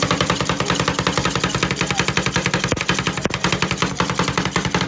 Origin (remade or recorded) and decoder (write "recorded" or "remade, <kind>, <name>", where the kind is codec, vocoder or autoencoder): recorded